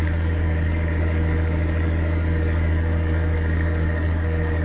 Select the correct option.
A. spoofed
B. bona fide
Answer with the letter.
A